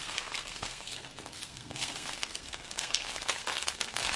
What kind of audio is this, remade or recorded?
remade